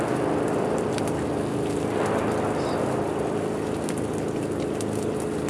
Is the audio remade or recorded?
recorded